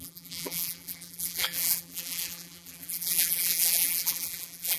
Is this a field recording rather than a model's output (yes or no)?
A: no